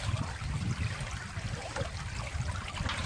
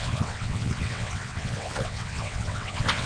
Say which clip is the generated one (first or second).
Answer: second